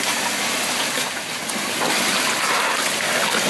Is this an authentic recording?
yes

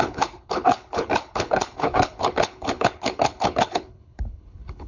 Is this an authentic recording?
no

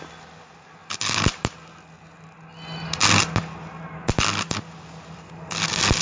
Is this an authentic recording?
yes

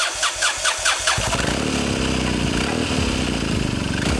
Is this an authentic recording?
yes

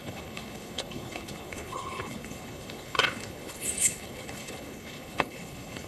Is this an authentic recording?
no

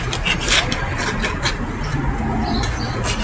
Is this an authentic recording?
yes